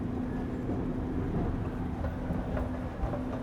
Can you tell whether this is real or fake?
real